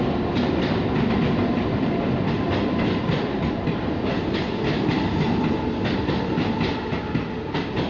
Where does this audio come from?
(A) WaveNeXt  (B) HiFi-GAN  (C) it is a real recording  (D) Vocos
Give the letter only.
C